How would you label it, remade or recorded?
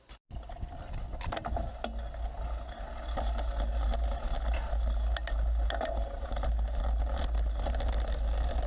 recorded